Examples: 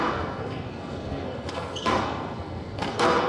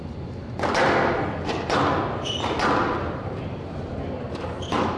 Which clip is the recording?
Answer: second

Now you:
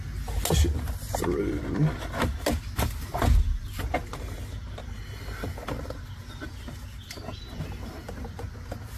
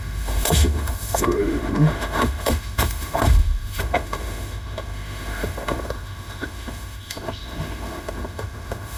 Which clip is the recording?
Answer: first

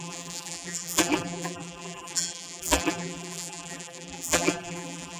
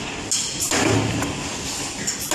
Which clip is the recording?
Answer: second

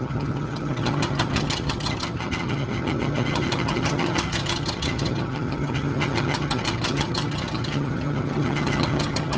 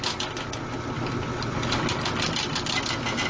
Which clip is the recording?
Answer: second